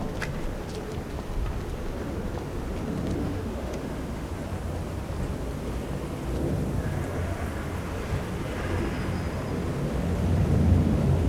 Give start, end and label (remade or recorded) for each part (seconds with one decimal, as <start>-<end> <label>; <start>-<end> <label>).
0.0-3.2 recorded; 3.2-4.3 remade; 4.3-11.3 recorded